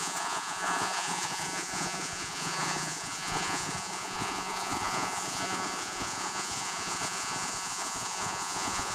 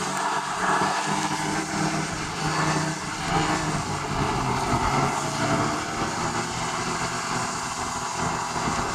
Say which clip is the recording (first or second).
second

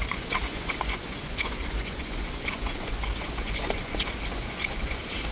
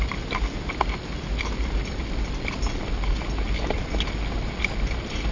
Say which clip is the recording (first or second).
second